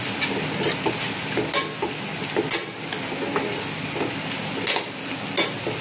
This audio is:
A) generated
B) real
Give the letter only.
B